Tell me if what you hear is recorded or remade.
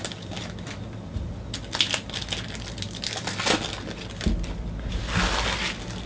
recorded